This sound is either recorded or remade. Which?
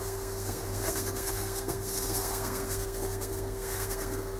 remade